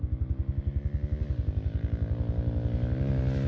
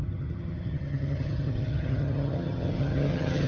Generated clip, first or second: second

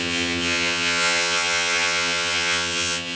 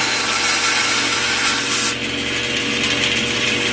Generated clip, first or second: first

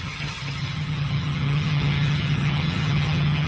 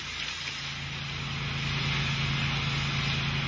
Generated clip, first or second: first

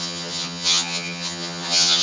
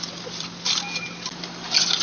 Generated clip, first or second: first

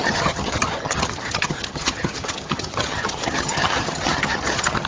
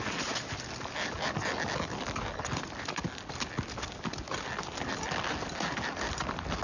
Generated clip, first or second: first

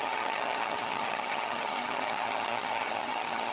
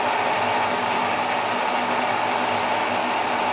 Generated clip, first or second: first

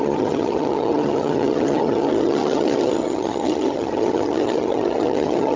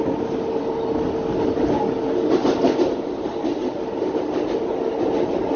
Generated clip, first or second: first